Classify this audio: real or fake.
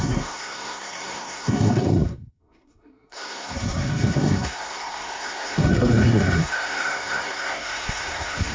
fake